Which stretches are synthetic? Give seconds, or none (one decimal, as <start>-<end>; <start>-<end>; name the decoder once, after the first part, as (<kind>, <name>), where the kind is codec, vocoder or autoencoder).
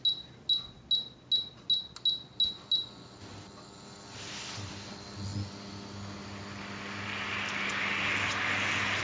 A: none